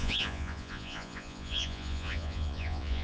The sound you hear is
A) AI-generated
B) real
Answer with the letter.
A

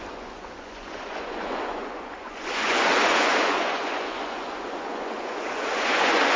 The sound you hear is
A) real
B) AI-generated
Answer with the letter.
B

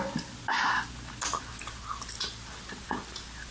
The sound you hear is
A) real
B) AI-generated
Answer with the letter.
A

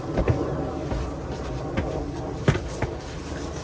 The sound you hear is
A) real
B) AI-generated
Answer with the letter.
A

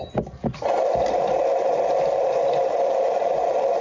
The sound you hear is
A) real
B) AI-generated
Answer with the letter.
A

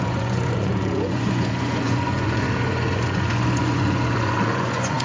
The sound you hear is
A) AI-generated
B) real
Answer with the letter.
A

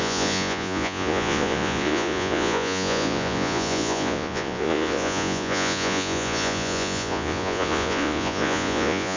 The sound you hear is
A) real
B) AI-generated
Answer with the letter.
B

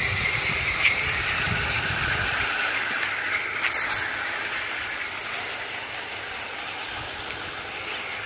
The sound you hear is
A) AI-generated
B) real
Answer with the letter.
B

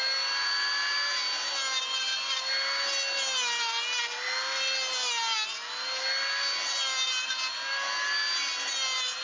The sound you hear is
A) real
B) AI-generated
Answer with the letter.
A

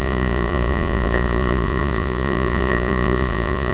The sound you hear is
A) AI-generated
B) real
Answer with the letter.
A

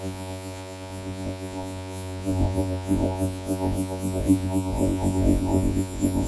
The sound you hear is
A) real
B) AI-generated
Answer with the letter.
B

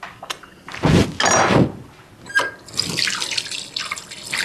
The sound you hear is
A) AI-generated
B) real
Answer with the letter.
B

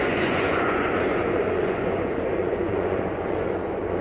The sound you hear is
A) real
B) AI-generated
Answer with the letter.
B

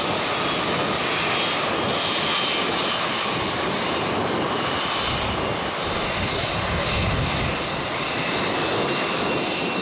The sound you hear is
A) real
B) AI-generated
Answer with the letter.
A